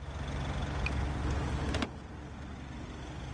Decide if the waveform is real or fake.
real